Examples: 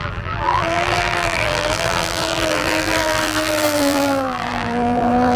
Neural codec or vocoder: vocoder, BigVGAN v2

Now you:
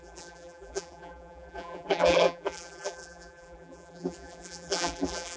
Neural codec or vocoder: vocoder, BigVGAN v2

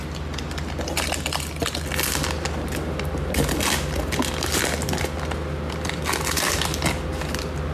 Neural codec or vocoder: none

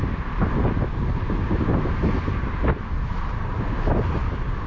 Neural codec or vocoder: none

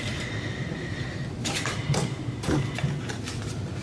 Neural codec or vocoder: vocoder, BigVGAN v2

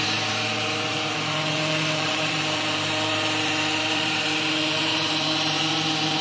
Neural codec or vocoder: vocoder, BigVGAN v2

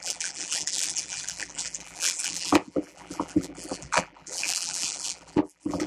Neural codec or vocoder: vocoder, BigVGAN v2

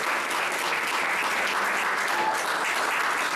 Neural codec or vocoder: none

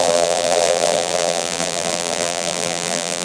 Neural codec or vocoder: vocoder, BigVGAN v2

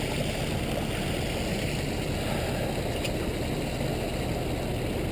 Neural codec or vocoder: none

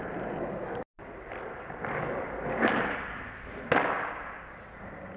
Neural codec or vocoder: none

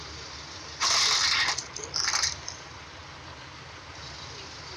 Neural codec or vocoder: none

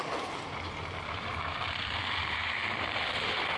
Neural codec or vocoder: none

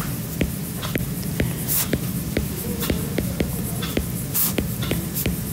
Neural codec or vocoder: none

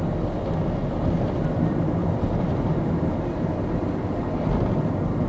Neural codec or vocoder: none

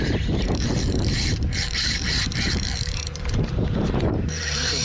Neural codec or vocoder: vocoder, BigVGAN v2